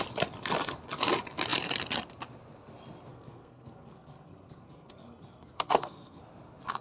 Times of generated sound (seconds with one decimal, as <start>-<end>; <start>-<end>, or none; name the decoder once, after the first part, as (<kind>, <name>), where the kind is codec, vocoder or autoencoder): 3.1-6.2 (codec, SNAC)